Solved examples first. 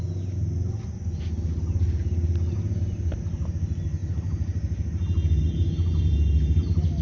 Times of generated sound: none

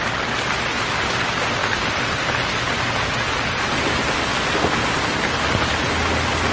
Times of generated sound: none

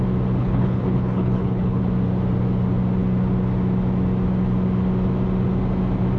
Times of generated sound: 0.4-1.8

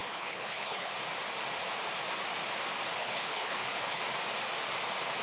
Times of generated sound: 0.0-0.9; 3.0-4.0

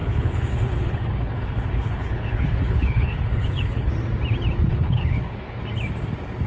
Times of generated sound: 0.0-3.9; 4.7-5.6

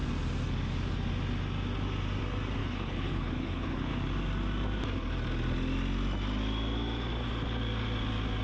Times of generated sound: 2.6-3.9

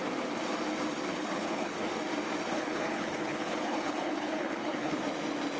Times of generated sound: 1.1-1.9; 2.5-5.0